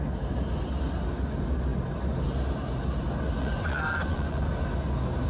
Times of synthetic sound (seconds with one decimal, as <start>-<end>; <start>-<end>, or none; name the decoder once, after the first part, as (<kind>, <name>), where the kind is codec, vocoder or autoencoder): 3.4-4.5 (vocoder, Vocos)

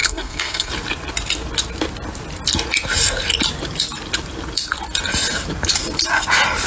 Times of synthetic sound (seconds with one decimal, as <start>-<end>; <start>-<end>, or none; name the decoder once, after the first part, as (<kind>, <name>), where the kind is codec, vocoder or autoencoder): 0.0-0.7 (codec, SNAC)

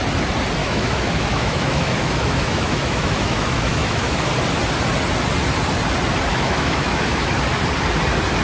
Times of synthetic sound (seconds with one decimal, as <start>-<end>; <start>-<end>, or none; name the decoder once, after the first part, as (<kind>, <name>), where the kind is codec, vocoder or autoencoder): 0.6-4.3 (autoencoder, DAC-VAE); 6.3-7.3

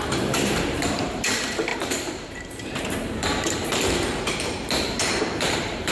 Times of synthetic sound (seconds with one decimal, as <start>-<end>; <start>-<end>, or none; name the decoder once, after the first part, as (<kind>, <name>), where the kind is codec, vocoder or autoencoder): 0.0-5.9 (vocoder, BigVGAN v2)

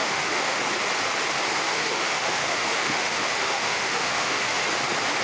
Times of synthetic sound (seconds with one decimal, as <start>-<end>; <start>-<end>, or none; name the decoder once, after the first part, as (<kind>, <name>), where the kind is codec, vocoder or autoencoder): 0.0-0.6 (autoencoder, DAC-VAE); 1.5-4.6